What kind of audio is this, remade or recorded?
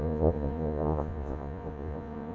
remade